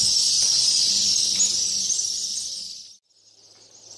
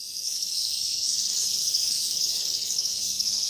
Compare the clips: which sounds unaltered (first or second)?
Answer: first